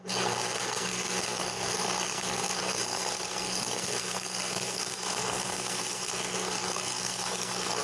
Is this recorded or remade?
remade